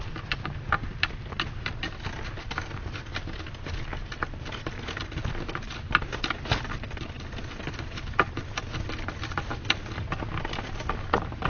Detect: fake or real real